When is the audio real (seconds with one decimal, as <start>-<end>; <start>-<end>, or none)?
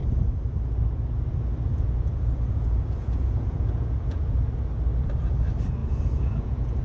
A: 0.0-1.7; 4.5-5.8